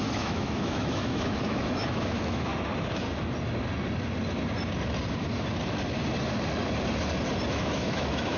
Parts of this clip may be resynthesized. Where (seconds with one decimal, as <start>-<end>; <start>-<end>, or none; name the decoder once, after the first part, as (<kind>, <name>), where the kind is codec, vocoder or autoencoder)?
0.0-2.5 (autoencoder, DAC-VAE); 7.5-8.4